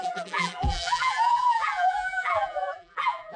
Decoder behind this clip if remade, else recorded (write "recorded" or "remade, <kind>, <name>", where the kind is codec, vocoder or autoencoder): remade, vocoder, BigVGAN v2